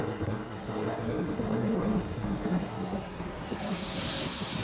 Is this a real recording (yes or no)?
no